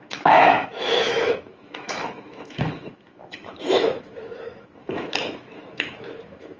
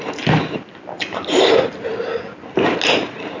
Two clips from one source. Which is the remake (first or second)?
first